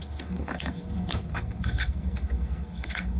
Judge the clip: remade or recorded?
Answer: remade